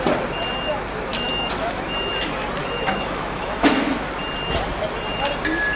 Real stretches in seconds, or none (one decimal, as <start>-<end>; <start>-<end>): 0.0-1.1; 2.1-2.6; 3.9-5.8